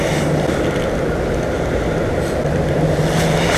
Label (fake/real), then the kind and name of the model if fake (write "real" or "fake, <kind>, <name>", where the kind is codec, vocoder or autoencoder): real